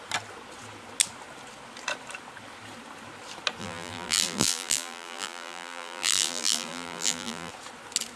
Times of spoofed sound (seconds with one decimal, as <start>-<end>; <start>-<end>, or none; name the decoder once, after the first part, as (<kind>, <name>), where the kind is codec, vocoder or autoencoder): 3.6-7.5 (vocoder, BigVGAN v2)

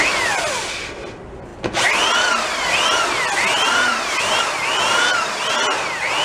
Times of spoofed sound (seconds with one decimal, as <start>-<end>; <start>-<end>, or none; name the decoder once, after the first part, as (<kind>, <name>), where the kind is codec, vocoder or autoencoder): none

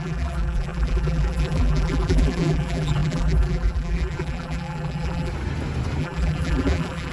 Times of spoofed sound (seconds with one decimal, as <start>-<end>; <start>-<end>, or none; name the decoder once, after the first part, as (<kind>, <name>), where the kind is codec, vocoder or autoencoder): 0.0-5.3 (vocoder, BigVGAN v2); 6.0-7.1

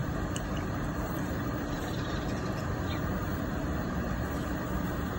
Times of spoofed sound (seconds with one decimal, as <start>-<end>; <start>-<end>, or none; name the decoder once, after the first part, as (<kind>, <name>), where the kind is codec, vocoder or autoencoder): 0.0-2.2 (vocoder, BigVGAN v2); 3.2-4.6

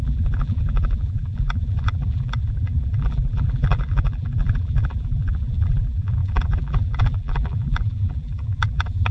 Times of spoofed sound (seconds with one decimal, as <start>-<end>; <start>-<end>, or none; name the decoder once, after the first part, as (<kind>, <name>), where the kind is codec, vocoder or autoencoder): 0.0-9.1 (vocoder, BigVGAN v2)

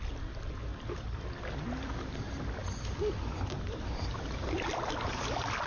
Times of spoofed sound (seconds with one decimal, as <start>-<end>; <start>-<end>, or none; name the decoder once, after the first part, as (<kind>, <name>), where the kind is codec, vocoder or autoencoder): none

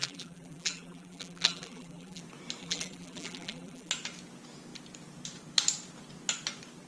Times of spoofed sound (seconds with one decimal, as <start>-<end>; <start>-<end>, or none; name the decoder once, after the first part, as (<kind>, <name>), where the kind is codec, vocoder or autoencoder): 0.0-2.2 (vocoder, BigVGAN v2); 2.6-3.9

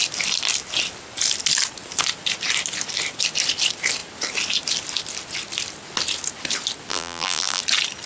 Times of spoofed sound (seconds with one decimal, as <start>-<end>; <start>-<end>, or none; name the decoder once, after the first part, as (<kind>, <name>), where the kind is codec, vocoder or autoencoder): 6.9-7.6 (vocoder, BigVGAN v2)